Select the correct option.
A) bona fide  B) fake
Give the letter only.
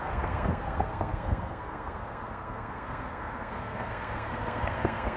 B